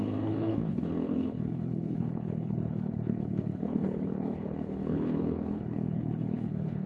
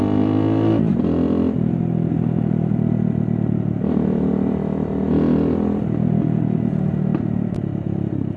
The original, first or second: second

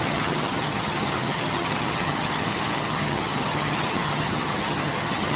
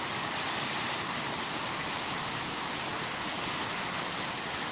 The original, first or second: second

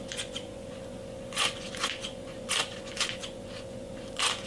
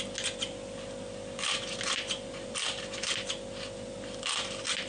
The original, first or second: second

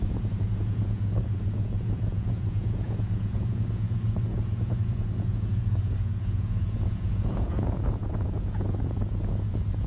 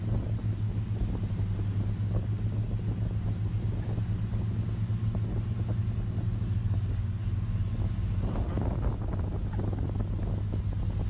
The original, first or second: second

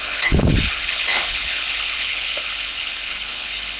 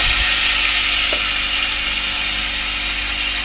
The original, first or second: second